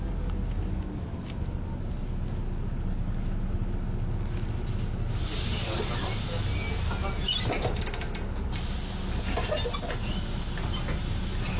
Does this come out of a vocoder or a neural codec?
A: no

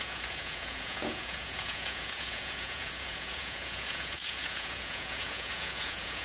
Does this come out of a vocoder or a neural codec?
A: yes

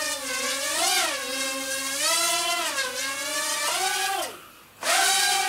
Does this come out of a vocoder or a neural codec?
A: no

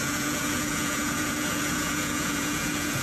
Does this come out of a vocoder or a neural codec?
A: yes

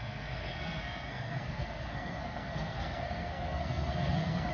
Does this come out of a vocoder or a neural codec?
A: yes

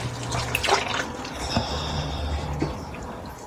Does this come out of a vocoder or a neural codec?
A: no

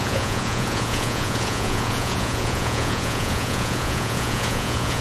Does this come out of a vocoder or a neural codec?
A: yes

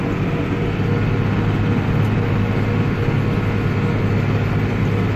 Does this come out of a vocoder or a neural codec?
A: no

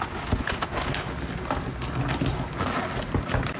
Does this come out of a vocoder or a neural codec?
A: no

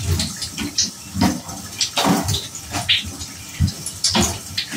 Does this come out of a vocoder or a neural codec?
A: no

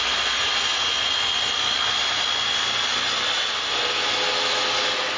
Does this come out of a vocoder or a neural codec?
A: no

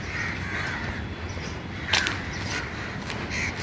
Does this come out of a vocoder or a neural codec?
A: yes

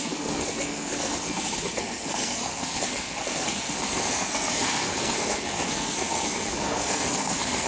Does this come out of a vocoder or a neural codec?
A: yes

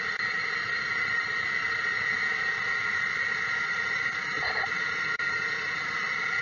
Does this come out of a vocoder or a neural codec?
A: yes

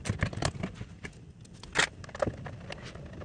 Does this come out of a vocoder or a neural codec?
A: no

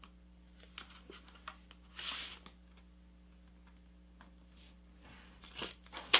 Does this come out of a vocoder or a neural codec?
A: no